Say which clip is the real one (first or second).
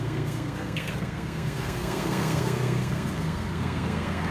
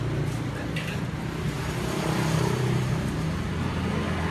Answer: second